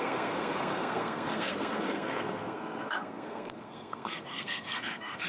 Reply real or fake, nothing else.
fake